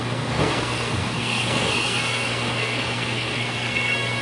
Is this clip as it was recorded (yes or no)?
no